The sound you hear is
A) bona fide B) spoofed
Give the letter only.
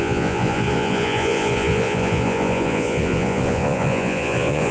B